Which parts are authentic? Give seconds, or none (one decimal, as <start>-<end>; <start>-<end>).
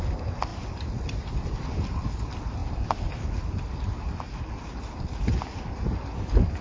0.0-6.6